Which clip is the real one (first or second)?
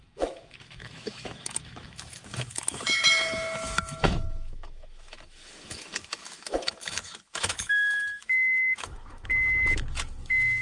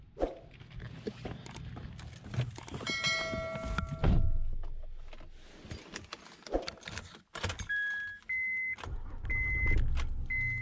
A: second